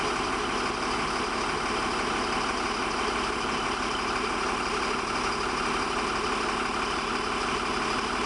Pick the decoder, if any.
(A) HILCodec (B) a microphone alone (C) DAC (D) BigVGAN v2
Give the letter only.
B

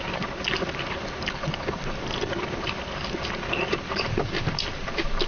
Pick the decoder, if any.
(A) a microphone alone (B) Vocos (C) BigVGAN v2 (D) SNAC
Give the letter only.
A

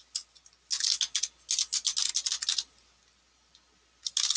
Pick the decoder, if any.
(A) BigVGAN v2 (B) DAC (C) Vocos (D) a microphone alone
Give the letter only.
D